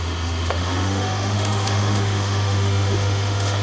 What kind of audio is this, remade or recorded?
remade